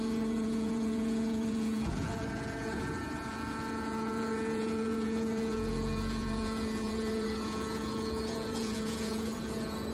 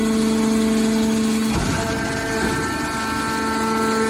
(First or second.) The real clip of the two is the second